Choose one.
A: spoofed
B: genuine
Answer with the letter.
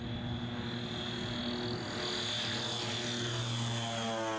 B